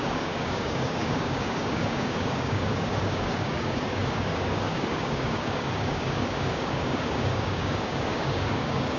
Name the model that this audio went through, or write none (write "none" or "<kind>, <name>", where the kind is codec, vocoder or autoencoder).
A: codec, DAC